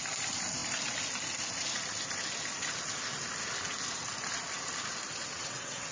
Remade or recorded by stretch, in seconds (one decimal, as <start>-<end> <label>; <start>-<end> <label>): 0.0-5.3 recorded; 5.3-5.9 remade